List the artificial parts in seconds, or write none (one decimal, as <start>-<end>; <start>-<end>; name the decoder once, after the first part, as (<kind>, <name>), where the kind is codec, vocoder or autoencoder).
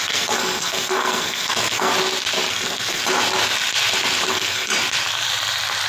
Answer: 0.0-1.9 (codec, SNAC); 2.5-3.0; 4.3-4.7